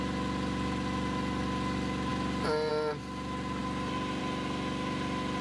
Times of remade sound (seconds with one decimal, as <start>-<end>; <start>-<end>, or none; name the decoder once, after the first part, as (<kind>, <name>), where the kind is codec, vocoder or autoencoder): none